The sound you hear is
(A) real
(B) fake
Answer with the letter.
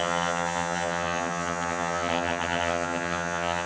B